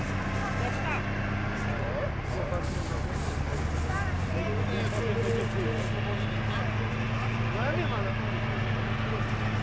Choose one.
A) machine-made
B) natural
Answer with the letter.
B